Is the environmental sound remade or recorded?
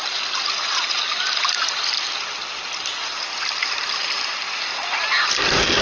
recorded